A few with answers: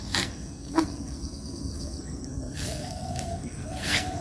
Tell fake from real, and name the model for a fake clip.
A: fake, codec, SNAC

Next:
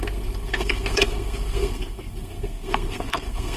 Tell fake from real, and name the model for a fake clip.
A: fake, codec, SNAC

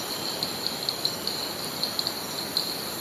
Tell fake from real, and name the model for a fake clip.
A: real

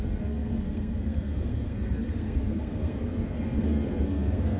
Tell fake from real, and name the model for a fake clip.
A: fake, codec, SNAC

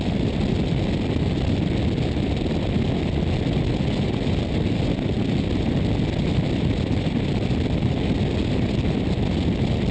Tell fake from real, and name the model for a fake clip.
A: real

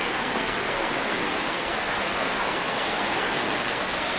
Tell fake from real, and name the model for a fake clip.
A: fake, codec, SNAC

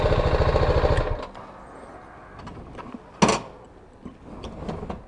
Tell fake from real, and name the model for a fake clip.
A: real